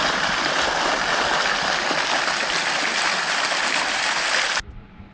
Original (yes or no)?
yes